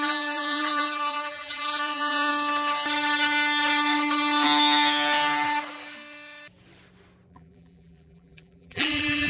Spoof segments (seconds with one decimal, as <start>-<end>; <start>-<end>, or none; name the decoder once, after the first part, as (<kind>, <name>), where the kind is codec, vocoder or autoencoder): 0.0-2.3 (vocoder, BigVGAN v2); 7.3-9.3